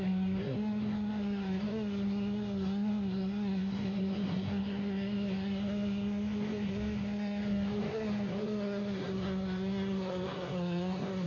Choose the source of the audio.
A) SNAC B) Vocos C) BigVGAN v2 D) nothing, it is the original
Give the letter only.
A